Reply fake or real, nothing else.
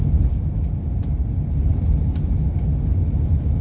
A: real